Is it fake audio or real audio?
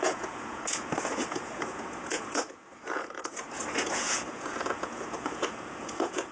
fake